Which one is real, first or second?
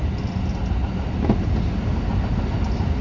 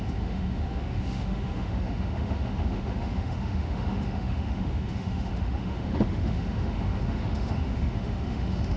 first